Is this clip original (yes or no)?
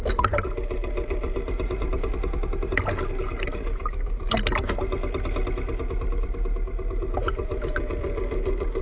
yes